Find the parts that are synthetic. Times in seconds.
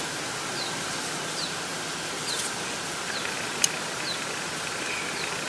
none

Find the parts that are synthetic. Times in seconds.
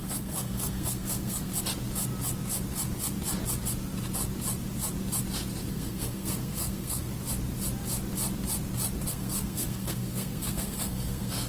0.0-1.5 (codec, SNAC); 5.7-7.1; 9.1-11.5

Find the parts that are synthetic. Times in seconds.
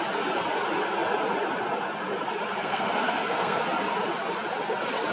2.6-3.6 (codec, SNAC)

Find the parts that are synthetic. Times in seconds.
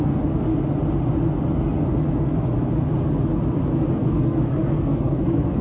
0.0-0.5 (codec, SNAC); 3.9-5.6